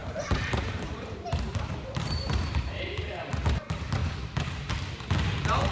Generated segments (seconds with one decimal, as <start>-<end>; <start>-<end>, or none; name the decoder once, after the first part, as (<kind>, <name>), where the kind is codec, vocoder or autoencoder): 0.0-3.3 (vocoder, BigVGAN v2)